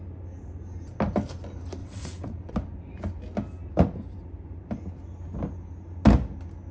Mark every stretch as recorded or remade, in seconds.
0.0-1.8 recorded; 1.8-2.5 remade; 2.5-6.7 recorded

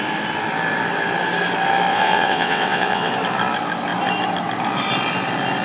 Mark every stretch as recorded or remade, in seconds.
0.0-1.9 recorded; 1.9-3.1 remade; 3.1-5.6 recorded

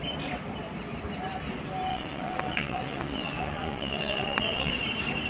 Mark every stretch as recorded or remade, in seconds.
0.0-1.9 recorded; 1.9-4.7 remade; 4.7-5.3 recorded

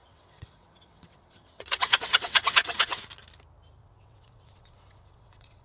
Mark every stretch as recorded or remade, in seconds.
0.0-2.9 remade; 2.9-3.8 recorded; 3.8-5.6 remade

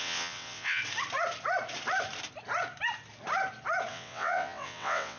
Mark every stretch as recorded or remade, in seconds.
0.0-0.8 remade; 0.8-3.9 recorded; 3.9-5.2 remade

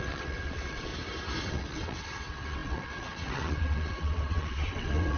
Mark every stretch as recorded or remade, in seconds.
0.0-0.9 remade; 0.9-1.5 recorded; 1.5-5.2 remade

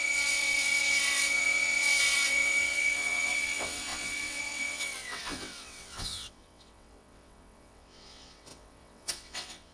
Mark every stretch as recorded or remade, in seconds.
0.0-9.7 remade

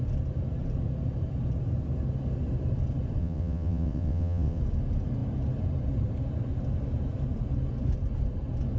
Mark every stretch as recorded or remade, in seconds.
0.0-3.2 recorded; 3.2-4.6 remade; 4.6-8.8 recorded